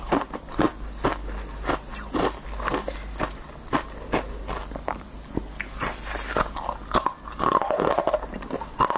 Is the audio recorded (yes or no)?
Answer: yes